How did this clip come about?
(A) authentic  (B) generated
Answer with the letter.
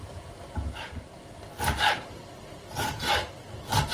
A